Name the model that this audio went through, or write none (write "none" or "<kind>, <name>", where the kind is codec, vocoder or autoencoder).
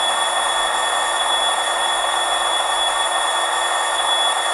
none